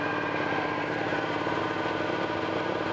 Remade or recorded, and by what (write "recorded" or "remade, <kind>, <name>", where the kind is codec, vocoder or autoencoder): remade, vocoder, BigVGAN v2